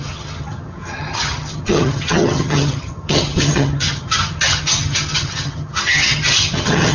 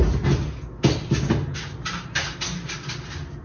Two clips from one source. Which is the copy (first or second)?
first